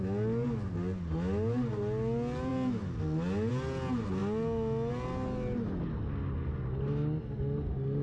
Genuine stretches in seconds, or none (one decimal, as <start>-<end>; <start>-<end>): 0.0-8.0